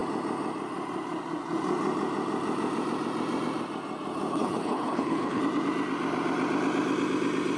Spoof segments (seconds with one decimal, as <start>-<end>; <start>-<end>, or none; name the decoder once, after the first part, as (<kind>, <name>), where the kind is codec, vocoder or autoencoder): 4.3-5.4 (codec, HILCodec)